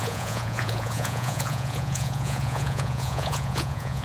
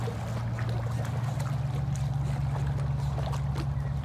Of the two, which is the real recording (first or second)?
second